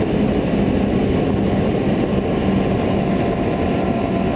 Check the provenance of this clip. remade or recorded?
recorded